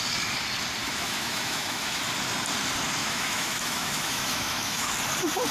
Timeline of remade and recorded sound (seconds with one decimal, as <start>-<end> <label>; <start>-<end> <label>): 0.0-0.8 recorded; 0.8-2.0 remade; 2.0-3.0 recorded; 3.0-4.9 remade; 4.9-5.5 recorded